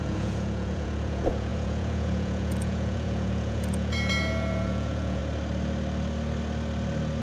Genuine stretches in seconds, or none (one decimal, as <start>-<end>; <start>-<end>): 5.2-7.2